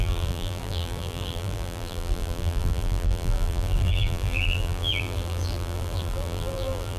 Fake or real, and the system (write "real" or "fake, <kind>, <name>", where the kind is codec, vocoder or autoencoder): fake, vocoder, BigVGAN v2